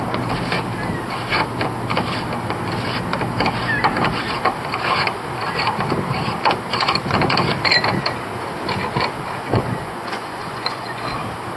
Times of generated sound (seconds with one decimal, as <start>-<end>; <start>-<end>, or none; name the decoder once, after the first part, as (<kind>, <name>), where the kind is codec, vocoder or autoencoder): 9.5-11.0 (vocoder, Vocos)